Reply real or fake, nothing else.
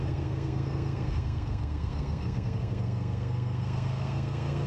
fake